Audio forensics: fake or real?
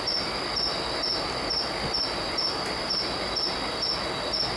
real